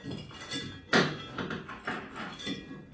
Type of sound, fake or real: real